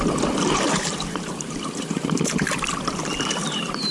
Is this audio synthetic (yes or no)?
no